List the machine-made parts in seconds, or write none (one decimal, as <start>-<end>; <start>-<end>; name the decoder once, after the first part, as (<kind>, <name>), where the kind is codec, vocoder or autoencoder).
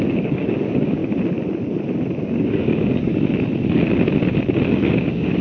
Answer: 0.0-1.0 (codec, DAC); 2.2-3.1; 4.7-5.4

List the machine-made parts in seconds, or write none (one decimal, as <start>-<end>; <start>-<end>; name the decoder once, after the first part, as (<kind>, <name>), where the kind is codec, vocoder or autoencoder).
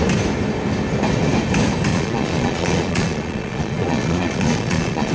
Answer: 1.9-5.1 (vocoder, Vocos)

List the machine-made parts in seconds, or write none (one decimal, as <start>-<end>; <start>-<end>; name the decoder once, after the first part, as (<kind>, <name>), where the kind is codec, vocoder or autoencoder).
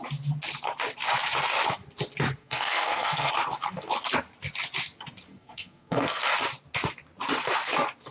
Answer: 2.4-3.3 (codec, SNAC); 5.3-6.2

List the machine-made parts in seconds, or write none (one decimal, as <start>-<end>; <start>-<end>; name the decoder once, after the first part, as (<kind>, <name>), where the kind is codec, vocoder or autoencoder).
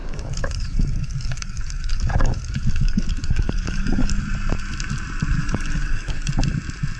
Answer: 0.0-4.2 (codec, DAC); 5.4-6.3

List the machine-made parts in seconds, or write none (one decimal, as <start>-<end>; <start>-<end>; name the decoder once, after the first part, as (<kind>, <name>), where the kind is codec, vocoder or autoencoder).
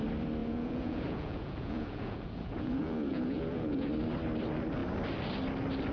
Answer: 0.4-3.9 (vocoder, Vocos)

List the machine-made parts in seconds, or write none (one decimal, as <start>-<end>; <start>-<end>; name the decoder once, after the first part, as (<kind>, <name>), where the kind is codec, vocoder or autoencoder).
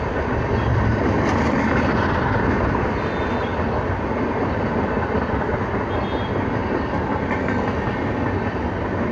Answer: 0.7-2.4 (vocoder, BigVGAN v2); 6.6-7.4